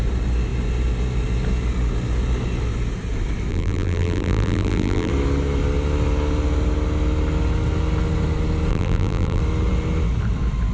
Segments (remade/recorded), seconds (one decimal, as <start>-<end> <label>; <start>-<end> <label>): 0.0-3.5 recorded; 3.5-5.1 remade; 5.1-8.7 recorded; 8.7-9.4 remade; 9.4-10.7 recorded